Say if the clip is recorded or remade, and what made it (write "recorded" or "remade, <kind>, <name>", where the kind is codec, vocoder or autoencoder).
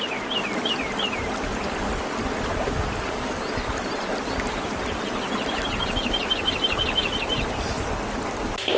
recorded